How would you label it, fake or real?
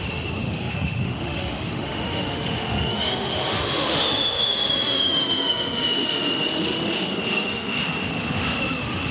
fake